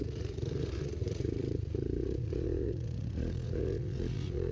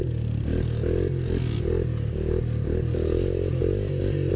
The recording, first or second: second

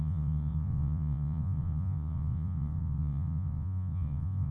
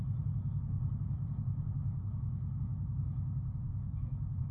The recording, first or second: second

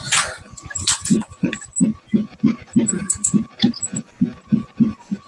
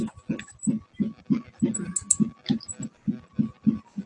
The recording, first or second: second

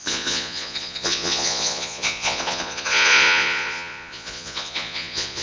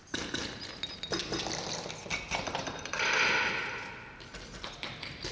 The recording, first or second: second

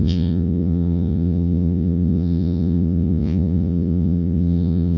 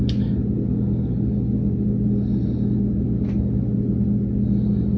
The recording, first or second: second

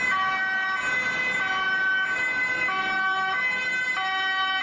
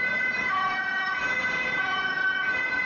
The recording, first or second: first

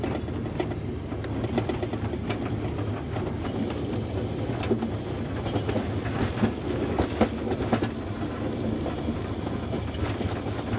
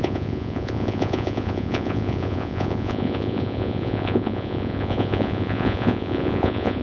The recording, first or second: first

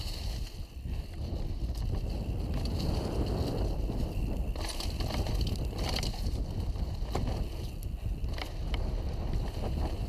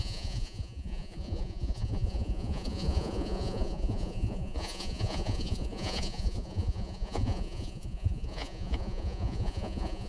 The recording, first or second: first